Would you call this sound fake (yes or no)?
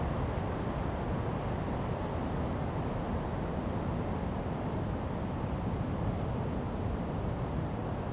no